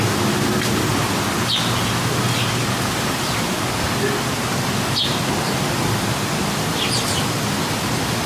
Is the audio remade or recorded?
recorded